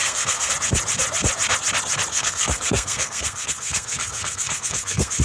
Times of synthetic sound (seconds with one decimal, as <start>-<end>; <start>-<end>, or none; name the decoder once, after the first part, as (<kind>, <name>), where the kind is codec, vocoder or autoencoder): 0.0-0.5 (codec, SNAC); 2.1-5.2